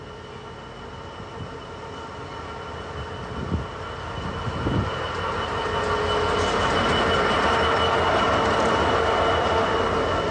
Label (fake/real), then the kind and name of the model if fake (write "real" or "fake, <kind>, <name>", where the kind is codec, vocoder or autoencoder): real